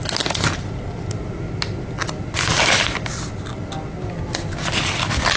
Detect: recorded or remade recorded